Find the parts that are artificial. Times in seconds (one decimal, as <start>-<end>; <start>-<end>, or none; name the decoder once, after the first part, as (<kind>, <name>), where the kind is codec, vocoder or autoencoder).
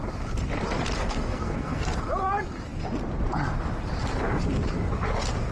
1.0-2.0 (codec, SNAC)